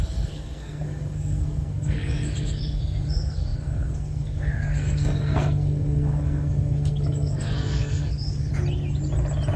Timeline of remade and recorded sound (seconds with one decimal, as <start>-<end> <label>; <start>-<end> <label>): 0.0-8.5 remade; 8.5-9.6 recorded